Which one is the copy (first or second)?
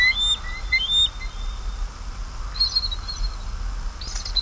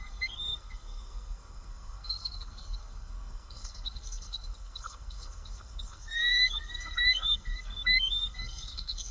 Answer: second